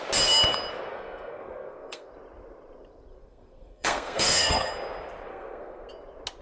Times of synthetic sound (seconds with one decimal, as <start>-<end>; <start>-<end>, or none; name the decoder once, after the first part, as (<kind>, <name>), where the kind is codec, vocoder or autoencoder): 0.9-2.1 (codec, SNAC); 3.1-4.7; 5.3-5.9